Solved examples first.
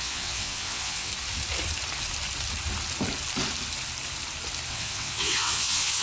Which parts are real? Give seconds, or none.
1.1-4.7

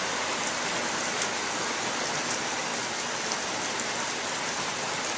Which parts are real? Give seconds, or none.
0.0-2.7; 3.3-5.2

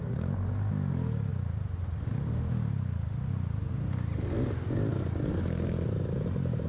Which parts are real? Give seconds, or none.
0.0-6.7

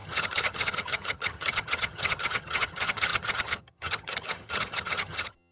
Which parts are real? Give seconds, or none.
none